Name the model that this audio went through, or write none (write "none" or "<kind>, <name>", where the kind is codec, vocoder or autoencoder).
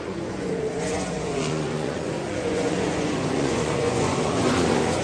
vocoder, Vocos